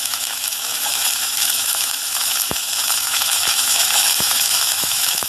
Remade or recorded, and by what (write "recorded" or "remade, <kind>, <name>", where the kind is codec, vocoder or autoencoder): remade, autoencoder, DAC-VAE